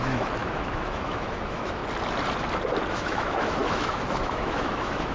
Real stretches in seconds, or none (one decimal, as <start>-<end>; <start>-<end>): 1.8-2.9